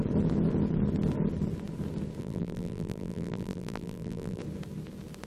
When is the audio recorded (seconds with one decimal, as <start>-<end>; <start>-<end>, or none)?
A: 0.0-2.2; 4.4-5.3